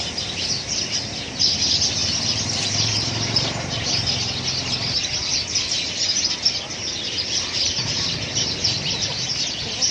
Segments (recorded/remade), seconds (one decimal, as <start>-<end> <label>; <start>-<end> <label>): 0.0-2.0 recorded; 2.0-3.9 remade; 3.9-9.9 recorded